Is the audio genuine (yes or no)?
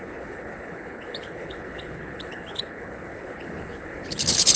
no